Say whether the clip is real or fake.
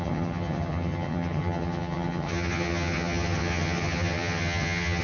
fake